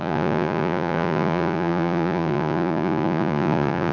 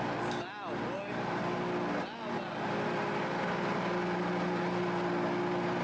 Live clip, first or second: second